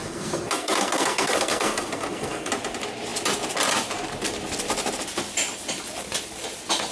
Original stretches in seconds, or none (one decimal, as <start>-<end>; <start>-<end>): 2.5-6.9